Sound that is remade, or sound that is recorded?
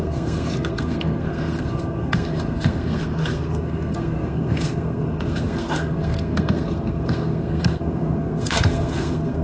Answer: remade